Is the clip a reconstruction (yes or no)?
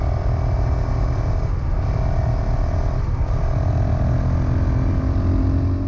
no